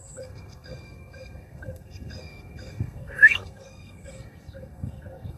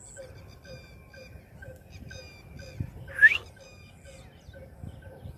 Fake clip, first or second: first